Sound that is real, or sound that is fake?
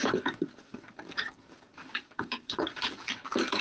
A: fake